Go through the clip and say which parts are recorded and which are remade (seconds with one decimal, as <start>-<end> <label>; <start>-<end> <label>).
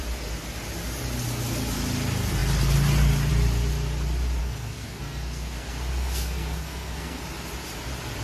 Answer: 0.0-4.4 recorded; 4.4-7.2 remade; 7.2-8.2 recorded